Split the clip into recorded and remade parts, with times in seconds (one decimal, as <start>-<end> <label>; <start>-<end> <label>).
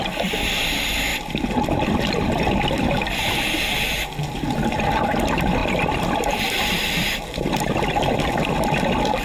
0.0-1.1 recorded; 1.1-2.6 remade; 2.6-5.6 recorded; 5.6-7.3 remade; 7.3-9.2 recorded